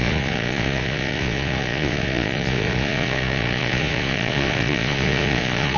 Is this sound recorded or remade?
remade